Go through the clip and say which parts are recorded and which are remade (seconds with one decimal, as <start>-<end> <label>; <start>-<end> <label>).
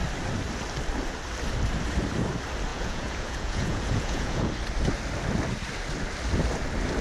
0.0-2.7 recorded; 2.7-4.5 remade; 4.5-7.0 recorded